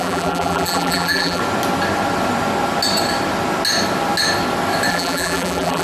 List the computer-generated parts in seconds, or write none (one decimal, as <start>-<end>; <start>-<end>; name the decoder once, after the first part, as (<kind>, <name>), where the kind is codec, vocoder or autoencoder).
0.0-1.4 (vocoder, BigVGAN v2); 4.9-5.8